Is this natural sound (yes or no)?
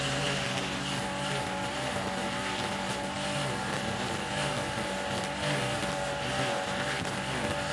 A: yes